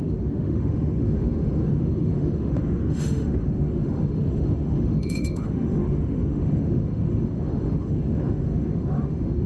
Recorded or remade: remade